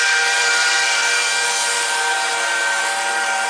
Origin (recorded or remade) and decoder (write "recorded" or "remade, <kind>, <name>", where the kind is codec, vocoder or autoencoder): recorded